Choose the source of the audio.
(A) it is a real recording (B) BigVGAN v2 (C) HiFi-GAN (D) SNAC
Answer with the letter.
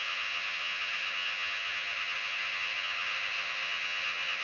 C